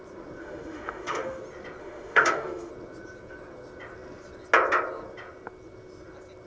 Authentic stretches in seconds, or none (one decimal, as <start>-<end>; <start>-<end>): 0.0-0.4; 1.4-1.8; 2.7-6.5